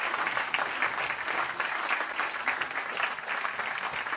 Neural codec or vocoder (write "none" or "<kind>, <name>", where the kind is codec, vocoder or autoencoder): none